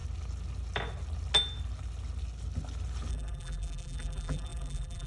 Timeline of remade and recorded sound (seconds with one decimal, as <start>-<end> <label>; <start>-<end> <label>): 0.0-3.1 recorded; 3.1-5.1 remade